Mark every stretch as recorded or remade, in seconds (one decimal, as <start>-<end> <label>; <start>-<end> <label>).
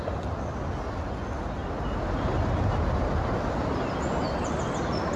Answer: 0.0-5.2 recorded